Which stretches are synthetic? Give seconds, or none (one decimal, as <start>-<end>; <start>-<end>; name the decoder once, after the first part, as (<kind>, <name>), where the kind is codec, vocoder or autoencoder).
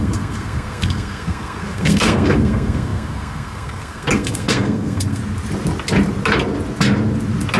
0.0-5.2 (codec, SNAC)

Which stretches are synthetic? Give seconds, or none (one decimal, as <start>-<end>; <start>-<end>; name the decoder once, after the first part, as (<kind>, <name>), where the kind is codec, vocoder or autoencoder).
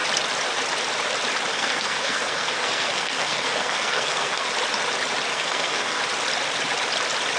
1.5-4.5 (codec, SNAC); 5.3-6.0